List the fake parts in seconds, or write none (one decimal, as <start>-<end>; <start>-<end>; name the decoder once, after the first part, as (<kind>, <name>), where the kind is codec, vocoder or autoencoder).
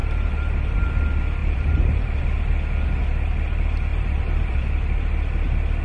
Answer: 0.0-0.9 (vocoder, BigVGAN v2); 1.4-2.2; 3.9-4.7